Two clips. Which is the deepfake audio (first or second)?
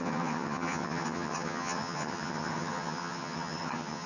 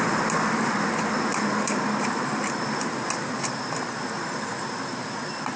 first